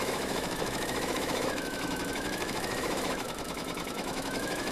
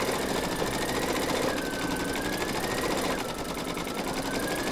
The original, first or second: second